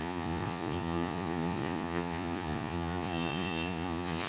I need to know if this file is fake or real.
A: fake